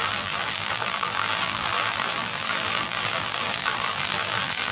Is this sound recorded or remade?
remade